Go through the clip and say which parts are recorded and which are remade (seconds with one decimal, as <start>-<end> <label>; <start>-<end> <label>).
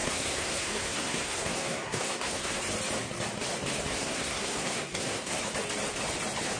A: 0.0-2.6 remade; 2.6-4.0 recorded; 4.0-5.4 remade; 5.4-6.6 recorded